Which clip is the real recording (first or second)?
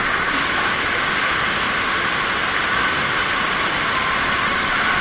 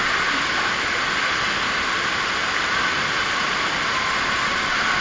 second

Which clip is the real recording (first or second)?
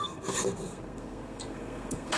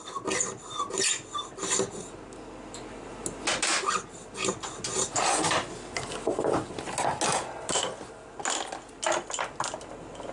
second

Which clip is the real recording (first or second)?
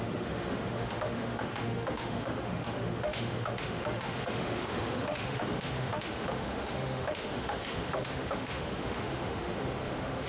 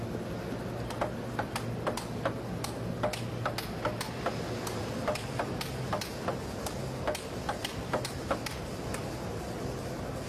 second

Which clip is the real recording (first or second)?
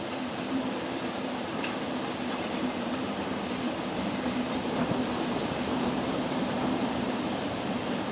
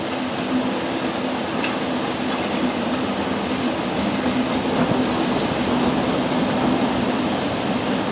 second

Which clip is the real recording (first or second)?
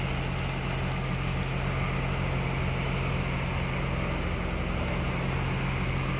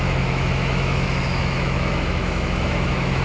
first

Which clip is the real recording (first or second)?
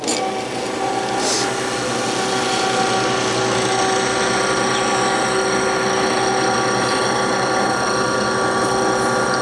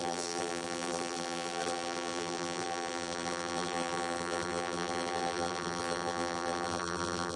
first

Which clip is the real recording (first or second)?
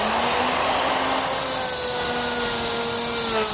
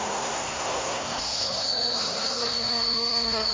first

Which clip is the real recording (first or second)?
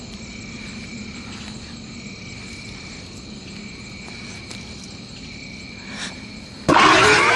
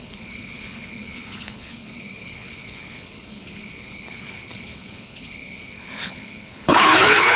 first